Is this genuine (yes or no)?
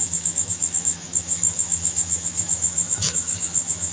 no